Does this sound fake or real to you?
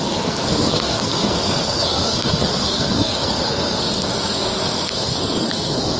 fake